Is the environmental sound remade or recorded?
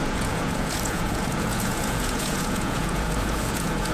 remade